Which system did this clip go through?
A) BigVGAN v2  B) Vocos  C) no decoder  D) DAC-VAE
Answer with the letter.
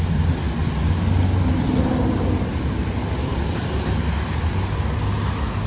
C